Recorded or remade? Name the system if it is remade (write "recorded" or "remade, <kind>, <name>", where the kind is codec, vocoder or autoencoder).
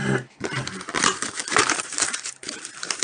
remade, vocoder, BigVGAN v2